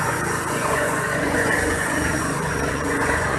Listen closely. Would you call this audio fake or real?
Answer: fake